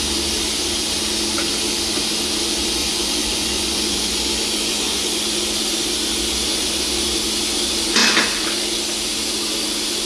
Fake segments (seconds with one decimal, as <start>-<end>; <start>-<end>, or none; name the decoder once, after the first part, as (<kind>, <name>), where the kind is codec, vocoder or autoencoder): 2.8-5.6 (vocoder, Vocos)

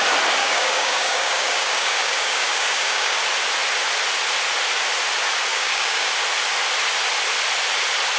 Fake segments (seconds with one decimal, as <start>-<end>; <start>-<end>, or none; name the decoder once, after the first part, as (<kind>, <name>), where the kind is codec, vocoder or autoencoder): 0.4-3.2 (codec, DAC); 5.5-6.1

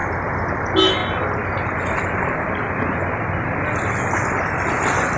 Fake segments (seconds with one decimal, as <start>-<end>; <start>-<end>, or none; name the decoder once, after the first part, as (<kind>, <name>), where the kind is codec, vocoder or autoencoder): none

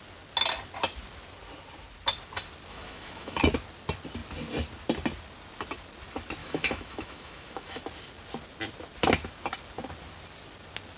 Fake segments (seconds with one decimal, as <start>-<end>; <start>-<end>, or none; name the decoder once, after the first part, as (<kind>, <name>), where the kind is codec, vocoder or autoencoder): 2.7-3.4 (autoencoder, DAC-VAE); 6.4-7.8

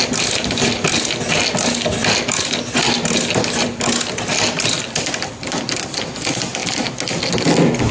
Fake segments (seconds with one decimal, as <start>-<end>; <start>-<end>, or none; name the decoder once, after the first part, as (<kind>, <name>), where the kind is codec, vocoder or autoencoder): none

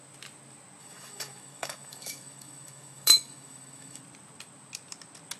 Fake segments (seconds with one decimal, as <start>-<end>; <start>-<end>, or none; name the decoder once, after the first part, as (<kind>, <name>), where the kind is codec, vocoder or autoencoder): 0.8-4.0 (autoencoder, DAC-VAE)

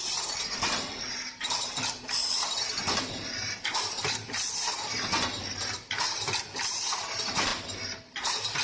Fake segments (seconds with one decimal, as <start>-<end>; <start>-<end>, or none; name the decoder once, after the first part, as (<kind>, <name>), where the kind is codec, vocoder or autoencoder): none

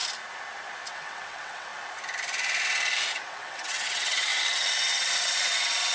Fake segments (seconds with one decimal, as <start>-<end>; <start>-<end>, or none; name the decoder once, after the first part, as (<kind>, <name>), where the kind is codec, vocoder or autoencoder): 0.9-1.7 (vocoder, WaveNeXt); 3.1-5.9